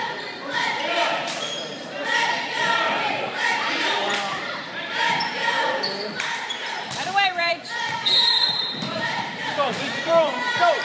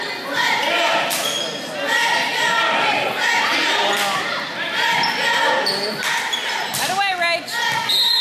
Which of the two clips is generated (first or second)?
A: first